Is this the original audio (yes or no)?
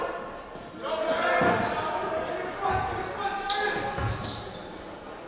yes